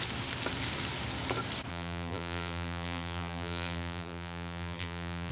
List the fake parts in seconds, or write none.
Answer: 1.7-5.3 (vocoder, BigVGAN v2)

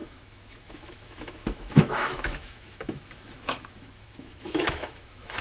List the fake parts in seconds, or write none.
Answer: 0.0-5.4 (autoencoder, DAC-VAE)